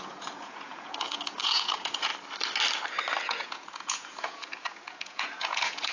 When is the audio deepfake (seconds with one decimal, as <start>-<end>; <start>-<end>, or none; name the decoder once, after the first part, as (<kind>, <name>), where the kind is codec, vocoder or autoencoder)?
0.0-2.1 (vocoder, Vocos); 3.2-5.9